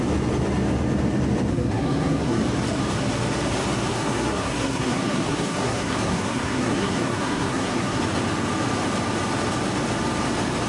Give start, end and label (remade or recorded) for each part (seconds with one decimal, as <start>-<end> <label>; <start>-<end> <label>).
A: 0.0-1.5 recorded; 1.5-2.4 remade; 2.4-3.9 recorded; 3.9-8.0 remade; 8.0-10.7 recorded